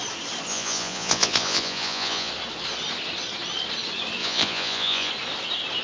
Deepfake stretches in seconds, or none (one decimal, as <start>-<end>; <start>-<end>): 0.5-2.3; 4.2-5.1